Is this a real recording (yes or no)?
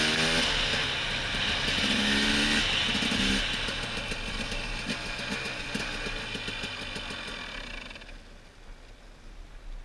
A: yes